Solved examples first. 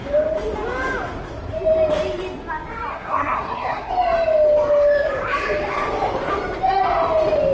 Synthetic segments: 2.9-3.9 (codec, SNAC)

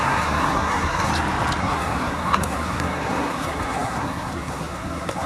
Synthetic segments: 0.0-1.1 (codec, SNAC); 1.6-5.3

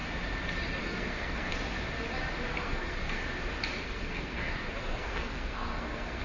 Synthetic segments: 0.8-1.5 (codec, SNAC); 2.6-3.2; 3.8-6.2

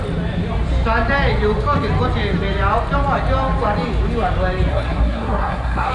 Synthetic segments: 4.7-5.9 (codec, SNAC)